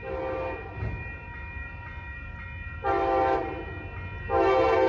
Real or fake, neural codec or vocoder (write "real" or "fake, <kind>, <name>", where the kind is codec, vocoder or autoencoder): real